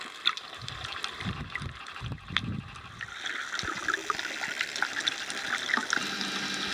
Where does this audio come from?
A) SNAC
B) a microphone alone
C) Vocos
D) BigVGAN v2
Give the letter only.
B